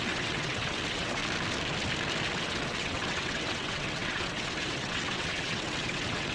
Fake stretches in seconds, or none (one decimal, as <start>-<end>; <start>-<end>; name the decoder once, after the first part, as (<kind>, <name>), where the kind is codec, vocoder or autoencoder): 0.0-1.2 (vocoder, WaveNeXt); 2.3-6.3